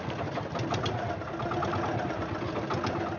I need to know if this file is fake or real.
real